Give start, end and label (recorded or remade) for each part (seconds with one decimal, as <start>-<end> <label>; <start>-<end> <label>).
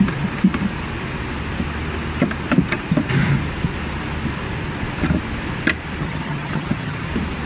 0.0-6.0 recorded; 6.0-7.1 remade; 7.1-7.5 recorded